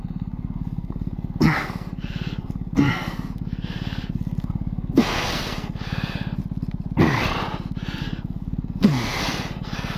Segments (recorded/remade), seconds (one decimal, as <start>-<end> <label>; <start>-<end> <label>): 0.0-6.4 remade; 6.4-8.0 recorded; 8.0-10.0 remade